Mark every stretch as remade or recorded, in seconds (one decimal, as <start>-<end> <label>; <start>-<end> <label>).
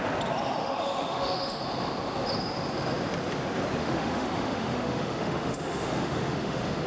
0.0-0.6 recorded; 0.6-1.6 remade; 1.6-3.8 recorded; 3.8-6.9 remade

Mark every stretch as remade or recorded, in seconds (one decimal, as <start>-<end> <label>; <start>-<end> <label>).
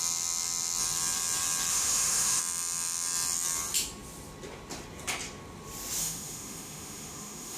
0.0-1.7 recorded; 1.7-2.4 remade; 2.4-6.0 recorded; 6.0-7.6 remade